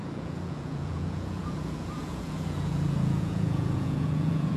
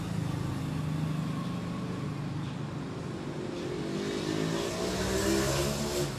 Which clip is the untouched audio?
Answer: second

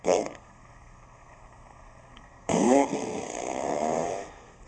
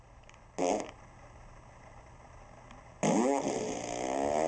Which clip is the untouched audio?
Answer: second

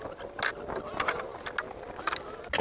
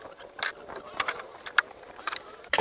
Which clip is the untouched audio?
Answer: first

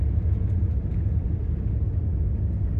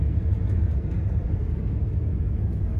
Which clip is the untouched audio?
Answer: first